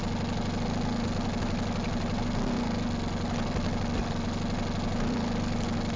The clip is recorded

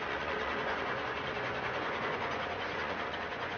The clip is remade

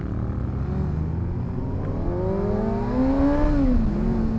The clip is recorded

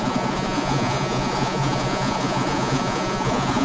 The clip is remade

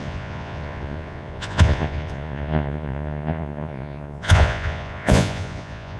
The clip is remade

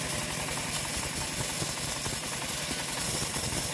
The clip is recorded